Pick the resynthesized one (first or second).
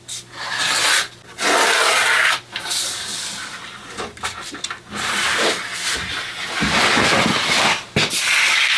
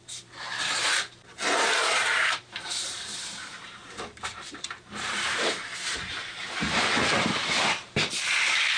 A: second